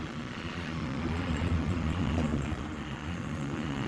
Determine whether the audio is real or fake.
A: fake